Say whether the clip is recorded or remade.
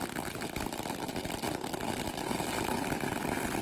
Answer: recorded